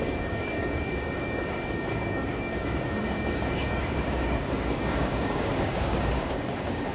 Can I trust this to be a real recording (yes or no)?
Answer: no